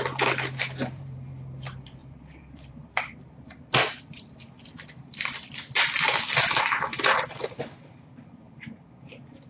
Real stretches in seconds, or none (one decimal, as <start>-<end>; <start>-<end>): 0.0-0.8; 1.3-2.0; 3.0-6.9; 8.2-9.5